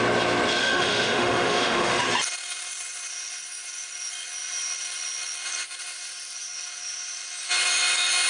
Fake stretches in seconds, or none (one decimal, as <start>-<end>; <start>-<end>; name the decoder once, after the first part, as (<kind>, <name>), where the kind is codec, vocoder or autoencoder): 0.6-2.0 (autoencoder, DAC-VAE)

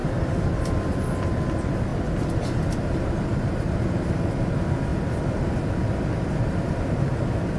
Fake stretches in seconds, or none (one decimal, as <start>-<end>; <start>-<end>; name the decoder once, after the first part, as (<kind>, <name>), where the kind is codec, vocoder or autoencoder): 0.0-1.1 (vocoder, BigVGAN v2); 1.9-2.8; 4.9-5.5

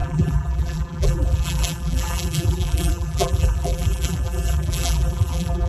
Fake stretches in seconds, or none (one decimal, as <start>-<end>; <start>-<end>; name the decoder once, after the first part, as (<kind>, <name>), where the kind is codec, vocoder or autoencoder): 0.0-5.7 (vocoder, BigVGAN v2)